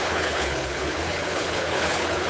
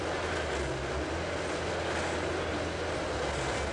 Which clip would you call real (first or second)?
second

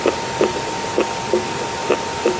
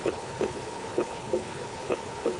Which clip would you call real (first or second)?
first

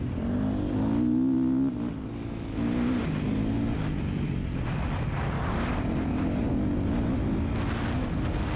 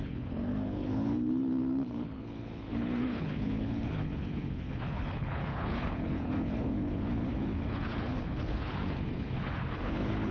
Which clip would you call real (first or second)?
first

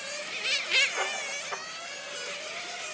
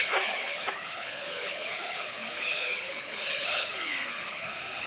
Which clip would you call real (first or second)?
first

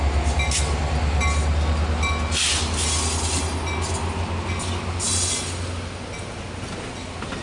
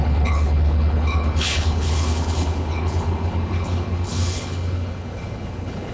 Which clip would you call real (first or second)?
first